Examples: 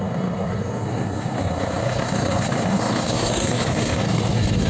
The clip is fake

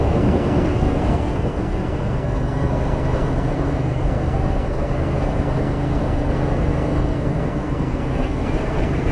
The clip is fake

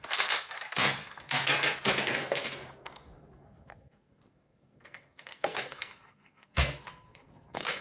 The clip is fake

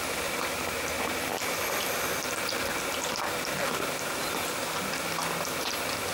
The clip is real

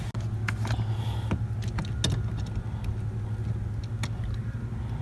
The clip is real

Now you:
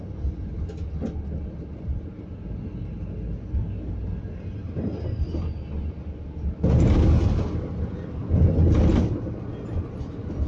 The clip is real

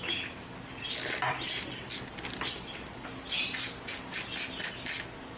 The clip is real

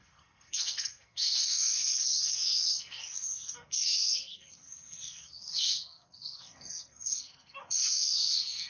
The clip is fake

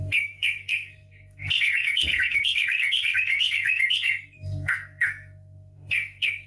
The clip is fake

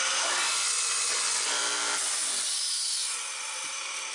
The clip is real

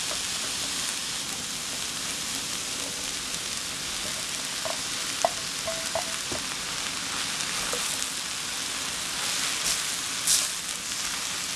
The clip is real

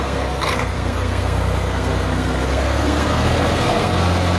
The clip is fake